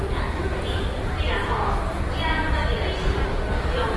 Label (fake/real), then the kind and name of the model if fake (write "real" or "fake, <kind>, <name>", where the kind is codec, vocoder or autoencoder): real